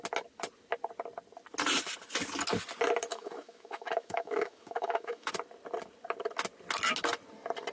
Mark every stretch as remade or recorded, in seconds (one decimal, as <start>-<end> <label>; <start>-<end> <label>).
0.0-3.1 recorded; 3.1-5.3 remade; 5.3-7.7 recorded